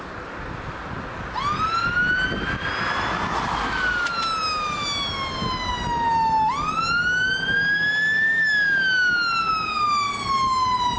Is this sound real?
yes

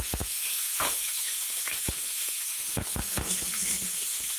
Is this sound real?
no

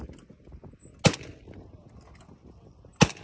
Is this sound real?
yes